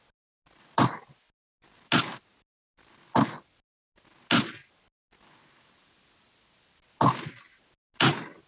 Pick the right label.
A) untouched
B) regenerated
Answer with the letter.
A